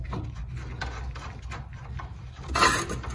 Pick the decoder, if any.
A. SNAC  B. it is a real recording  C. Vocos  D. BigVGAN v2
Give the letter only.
B